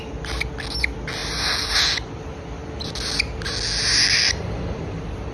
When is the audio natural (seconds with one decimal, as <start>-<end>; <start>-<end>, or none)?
0.0-5.3